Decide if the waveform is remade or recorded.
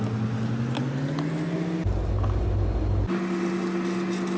recorded